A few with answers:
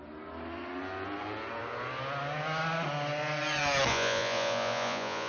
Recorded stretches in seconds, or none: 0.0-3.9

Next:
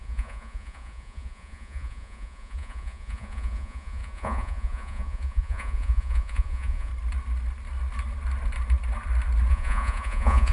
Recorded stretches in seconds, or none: 6.9-9.5

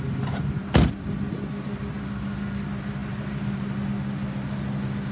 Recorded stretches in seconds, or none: 0.0-5.1

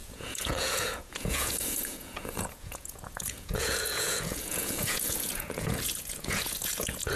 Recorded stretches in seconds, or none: none

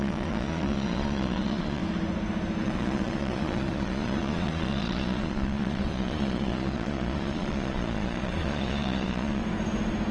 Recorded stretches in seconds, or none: 1.8-2.6; 9.4-10.1

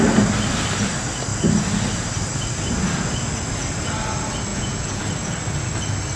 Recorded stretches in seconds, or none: 0.0-4.5; 5.0-6.2

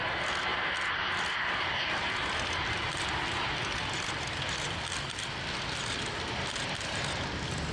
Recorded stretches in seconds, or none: 0.0-7.7